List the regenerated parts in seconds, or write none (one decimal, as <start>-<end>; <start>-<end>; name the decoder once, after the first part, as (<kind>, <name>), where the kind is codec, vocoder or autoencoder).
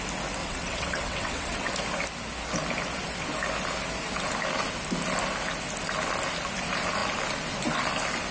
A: 0.4-1.7 (vocoder, WaveNeXt)